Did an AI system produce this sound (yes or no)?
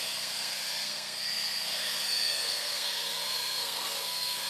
yes